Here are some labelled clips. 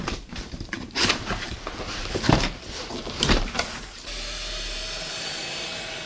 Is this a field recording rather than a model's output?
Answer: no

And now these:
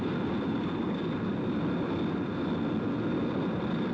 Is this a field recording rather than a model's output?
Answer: yes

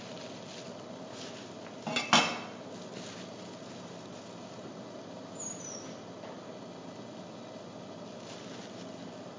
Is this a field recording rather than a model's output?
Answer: yes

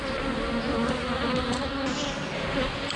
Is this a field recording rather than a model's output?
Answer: yes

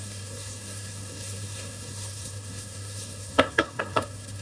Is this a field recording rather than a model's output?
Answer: no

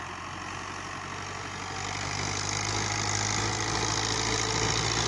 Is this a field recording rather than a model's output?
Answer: yes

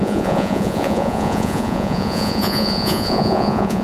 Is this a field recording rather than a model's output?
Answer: no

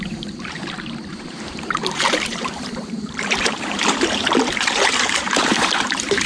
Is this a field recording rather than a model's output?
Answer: no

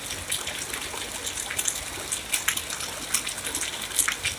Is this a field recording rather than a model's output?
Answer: yes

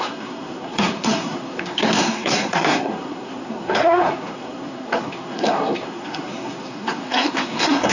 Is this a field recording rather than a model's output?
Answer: no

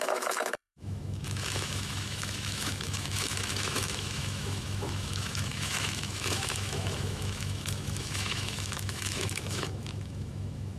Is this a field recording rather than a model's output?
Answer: no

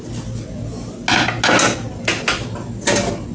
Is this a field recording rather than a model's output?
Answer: yes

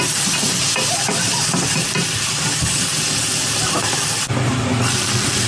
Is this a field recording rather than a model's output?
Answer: yes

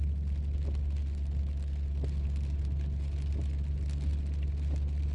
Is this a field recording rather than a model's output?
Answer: yes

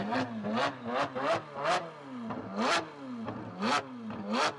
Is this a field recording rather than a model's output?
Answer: yes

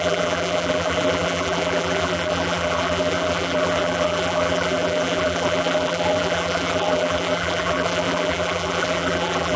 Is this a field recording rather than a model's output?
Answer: no